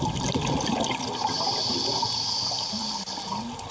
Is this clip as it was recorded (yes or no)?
yes